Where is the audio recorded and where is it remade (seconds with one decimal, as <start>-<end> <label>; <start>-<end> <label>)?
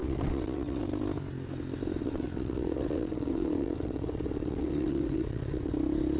0.0-0.8 remade; 0.8-2.0 recorded; 2.0-5.7 remade; 5.7-6.2 recorded